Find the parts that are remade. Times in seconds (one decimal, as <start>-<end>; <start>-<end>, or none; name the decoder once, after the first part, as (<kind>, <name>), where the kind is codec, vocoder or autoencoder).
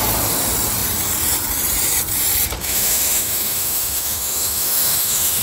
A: 2.6-5.4 (autoencoder, DAC-VAE)